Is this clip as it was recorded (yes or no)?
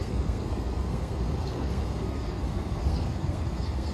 no